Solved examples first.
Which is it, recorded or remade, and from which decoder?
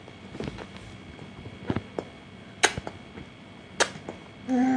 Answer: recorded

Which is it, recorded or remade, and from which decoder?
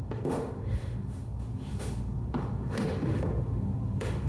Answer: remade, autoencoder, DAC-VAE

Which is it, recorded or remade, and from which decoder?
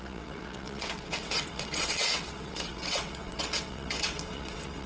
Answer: remade, vocoder, WaveNeXt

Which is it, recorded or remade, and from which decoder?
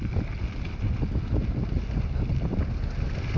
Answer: recorded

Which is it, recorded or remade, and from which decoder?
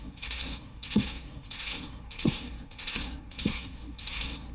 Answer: remade, codec, SNAC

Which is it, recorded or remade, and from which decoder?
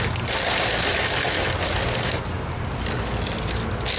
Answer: recorded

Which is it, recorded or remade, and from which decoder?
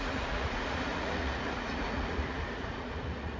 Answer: remade, vocoder, Vocos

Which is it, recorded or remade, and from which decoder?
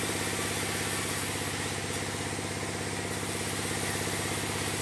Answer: recorded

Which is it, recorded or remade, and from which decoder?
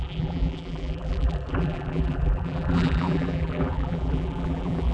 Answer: remade, vocoder, BigVGAN v2